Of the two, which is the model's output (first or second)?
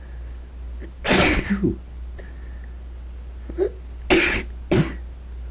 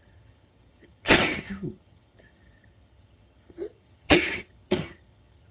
second